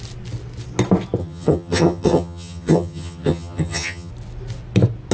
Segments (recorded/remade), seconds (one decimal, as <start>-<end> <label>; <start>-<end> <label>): 0.0-1.2 recorded; 1.2-4.1 remade; 4.1-5.1 recorded